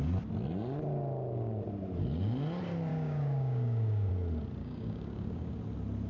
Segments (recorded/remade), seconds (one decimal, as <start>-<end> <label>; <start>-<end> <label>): 0.0-2.9 recorded; 2.9-4.1 remade; 4.1-4.6 recorded; 4.6-5.6 remade; 5.6-6.1 recorded